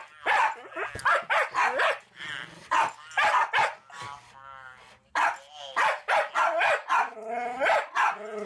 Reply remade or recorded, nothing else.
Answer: recorded